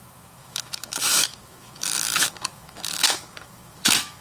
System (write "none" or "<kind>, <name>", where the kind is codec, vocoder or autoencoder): autoencoder, DAC-VAE